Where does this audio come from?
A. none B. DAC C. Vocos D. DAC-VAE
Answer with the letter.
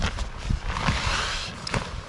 A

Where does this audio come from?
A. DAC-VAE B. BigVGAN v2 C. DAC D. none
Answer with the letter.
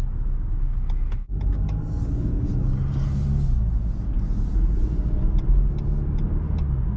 D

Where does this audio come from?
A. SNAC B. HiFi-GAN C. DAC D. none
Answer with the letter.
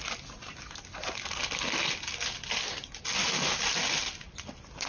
D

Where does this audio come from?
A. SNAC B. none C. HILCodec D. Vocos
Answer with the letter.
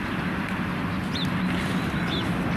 B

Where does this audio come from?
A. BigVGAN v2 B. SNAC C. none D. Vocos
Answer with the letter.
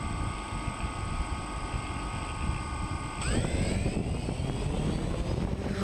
C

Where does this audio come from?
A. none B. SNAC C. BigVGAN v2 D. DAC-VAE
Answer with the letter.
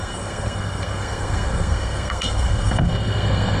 B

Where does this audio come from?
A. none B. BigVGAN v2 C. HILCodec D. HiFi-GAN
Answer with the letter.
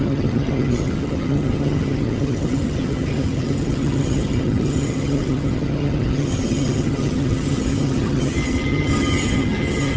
D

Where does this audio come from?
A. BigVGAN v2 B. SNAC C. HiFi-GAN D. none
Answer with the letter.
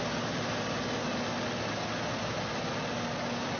D